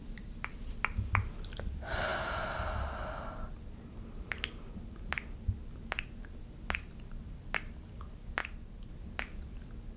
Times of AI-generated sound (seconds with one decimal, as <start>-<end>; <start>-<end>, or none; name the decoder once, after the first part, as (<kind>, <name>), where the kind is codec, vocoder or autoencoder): none